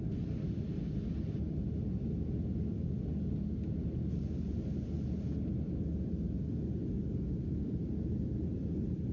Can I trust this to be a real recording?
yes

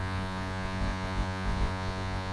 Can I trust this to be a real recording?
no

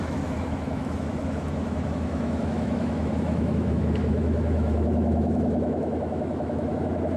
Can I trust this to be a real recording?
no